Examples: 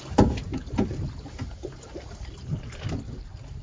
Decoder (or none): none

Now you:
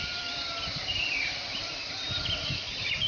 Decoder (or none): vocoder, BigVGAN v2